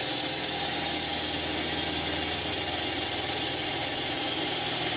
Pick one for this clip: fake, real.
real